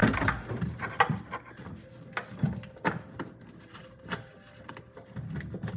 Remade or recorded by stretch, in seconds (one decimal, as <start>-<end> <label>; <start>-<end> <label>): 0.0-5.8 recorded